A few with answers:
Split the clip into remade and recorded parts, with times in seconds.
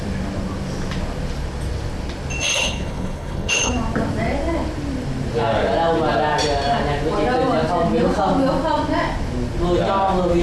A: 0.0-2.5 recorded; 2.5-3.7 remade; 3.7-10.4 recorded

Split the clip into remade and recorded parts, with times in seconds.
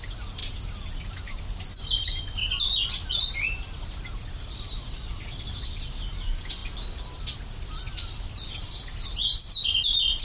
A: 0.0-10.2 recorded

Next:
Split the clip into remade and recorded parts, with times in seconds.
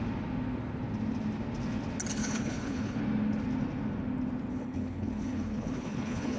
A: 0.0-2.2 recorded; 2.2-3.0 remade; 3.0-4.5 recorded; 4.5-6.4 remade